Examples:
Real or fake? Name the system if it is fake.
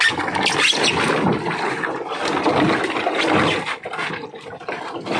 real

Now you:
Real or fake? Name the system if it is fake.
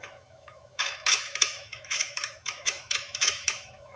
fake, autoencoder, DAC-VAE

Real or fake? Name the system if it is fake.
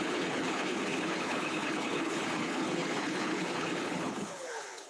fake, codec, HILCodec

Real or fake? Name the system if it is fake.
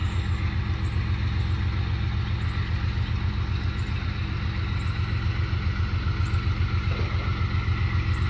real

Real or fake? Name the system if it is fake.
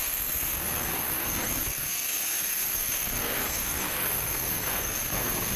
fake, codec, SNAC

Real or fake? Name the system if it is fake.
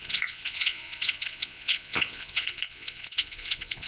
fake, vocoder, Vocos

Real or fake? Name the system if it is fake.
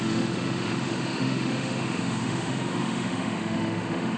fake, autoencoder, DAC-VAE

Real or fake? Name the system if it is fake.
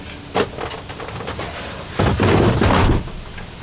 real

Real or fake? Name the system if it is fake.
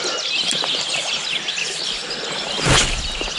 real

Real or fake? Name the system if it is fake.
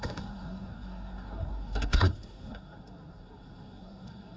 fake, codec, SNAC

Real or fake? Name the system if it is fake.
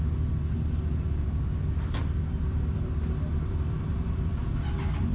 real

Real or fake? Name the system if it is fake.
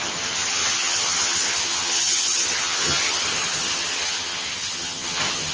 fake, vocoder, HiFi-GAN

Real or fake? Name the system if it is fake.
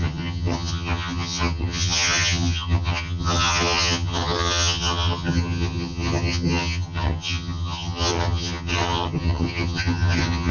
fake, vocoder, HiFi-GAN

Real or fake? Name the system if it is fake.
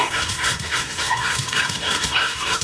fake, codec, SNAC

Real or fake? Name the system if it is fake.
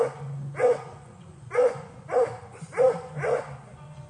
fake, vocoder, Vocos